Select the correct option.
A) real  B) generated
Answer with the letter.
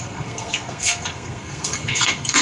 B